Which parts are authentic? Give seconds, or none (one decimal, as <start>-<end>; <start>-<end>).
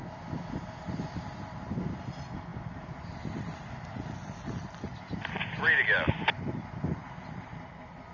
0.0-2.5; 6.3-8.1